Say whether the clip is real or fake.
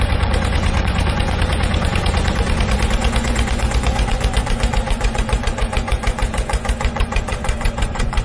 fake